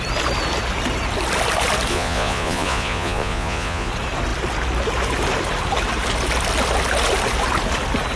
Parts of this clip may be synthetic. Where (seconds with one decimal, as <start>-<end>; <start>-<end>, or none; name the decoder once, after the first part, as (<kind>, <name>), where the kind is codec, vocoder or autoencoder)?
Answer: 1.9-3.9 (vocoder, Vocos)